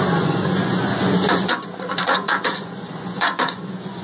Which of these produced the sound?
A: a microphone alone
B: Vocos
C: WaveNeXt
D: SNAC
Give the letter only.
B